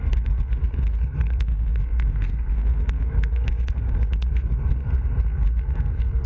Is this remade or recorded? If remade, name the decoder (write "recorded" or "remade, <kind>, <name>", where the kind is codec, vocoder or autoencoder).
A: remade, codec, SNAC